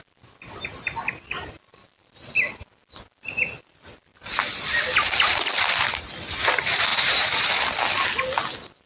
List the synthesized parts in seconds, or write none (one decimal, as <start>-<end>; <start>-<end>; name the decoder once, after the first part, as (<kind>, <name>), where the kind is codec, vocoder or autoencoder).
4.1-6.0 (vocoder, BigVGAN v2)